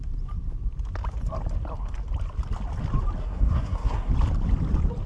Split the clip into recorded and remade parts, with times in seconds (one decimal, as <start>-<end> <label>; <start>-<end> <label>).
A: 0.0-3.2 recorded; 3.2-4.1 remade; 4.1-5.1 recorded